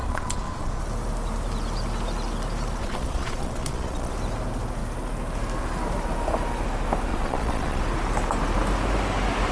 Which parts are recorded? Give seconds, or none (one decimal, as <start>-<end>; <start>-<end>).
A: 0.8-2.8; 4.1-7.1; 7.8-9.5